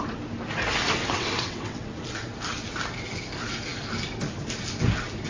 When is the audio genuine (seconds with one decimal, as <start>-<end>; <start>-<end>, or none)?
0.0-1.0; 2.0-5.3